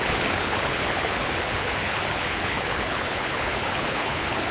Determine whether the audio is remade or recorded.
remade